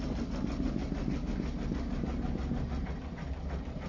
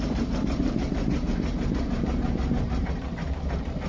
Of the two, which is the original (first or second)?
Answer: first